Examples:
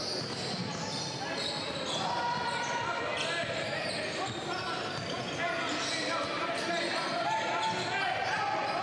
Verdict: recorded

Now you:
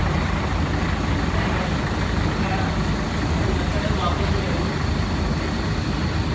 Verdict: remade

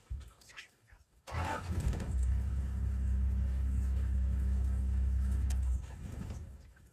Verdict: remade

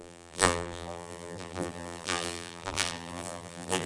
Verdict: remade